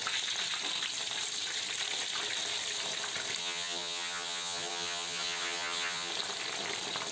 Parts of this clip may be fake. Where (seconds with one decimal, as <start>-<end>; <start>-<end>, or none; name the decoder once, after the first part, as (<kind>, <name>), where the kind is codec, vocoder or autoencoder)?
3.4-6.1 (vocoder, HiFi-GAN)